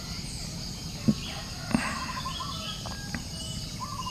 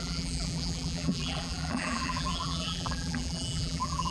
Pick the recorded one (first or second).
first